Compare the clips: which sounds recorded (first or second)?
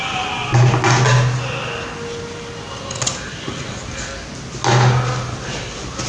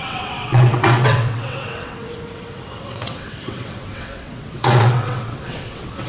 first